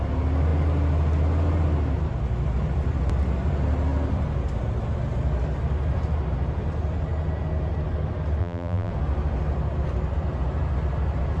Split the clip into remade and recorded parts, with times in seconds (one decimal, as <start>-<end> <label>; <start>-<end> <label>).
0.0-8.4 recorded; 8.4-8.9 remade; 8.9-11.4 recorded